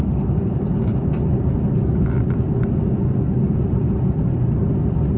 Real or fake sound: real